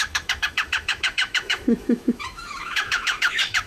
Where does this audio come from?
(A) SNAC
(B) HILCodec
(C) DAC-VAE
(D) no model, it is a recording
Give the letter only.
C